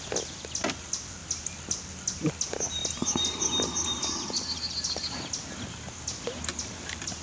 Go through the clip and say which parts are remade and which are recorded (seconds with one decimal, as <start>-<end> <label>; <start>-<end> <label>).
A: 0.0-7.2 recorded